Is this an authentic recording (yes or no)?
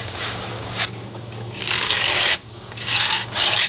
no